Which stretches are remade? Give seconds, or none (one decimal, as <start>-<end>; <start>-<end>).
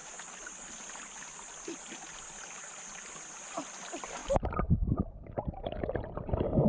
none